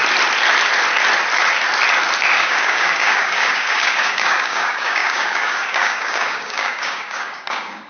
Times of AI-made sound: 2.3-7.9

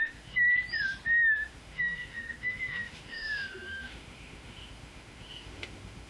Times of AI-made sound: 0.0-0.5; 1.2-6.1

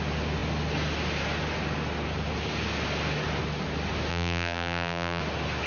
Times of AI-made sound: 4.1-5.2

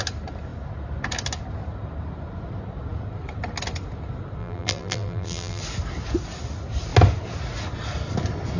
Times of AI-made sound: 4.4-5.6

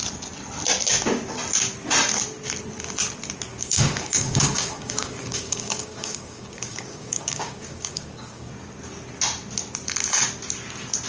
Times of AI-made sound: 3.5-8.5

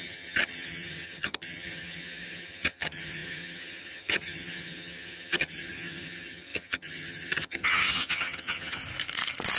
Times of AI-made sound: 0.0-8.8